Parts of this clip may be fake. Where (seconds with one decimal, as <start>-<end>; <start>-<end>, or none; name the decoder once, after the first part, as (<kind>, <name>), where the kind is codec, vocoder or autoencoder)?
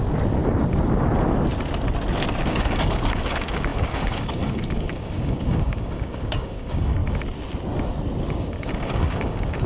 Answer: 2.4-7.0 (codec, DAC); 8.3-9.7